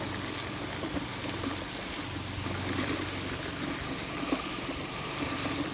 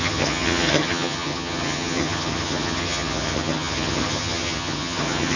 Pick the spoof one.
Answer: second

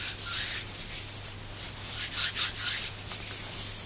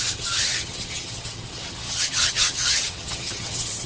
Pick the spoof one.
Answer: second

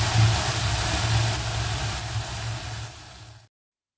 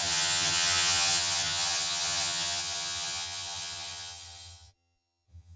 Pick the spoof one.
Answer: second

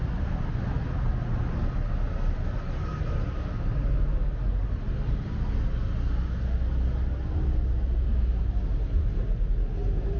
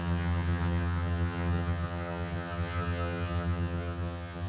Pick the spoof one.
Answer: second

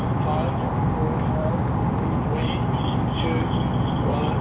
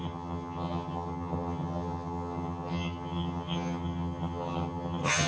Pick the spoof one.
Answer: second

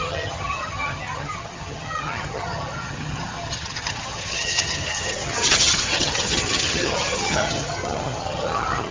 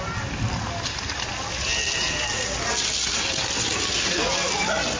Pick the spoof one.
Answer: first